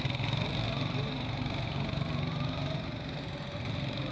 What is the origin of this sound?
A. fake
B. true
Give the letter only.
B